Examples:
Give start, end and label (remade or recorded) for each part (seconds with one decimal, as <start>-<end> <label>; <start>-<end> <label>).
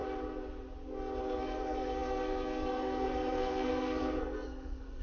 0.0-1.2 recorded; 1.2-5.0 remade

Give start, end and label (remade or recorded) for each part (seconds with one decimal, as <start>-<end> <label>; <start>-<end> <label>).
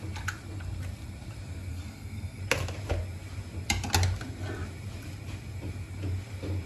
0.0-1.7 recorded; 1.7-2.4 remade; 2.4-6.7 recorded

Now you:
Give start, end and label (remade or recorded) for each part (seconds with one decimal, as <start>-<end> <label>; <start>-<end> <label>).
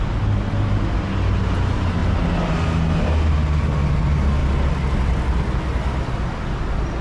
0.0-7.0 recorded